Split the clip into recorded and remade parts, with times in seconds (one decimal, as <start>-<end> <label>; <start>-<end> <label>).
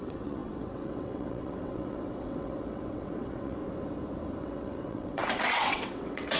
0.0-3.6 remade; 3.6-4.4 recorded; 4.4-6.4 remade